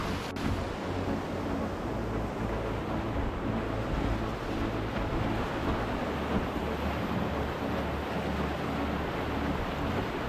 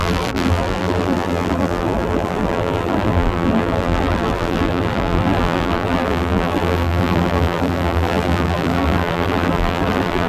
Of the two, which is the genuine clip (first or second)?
first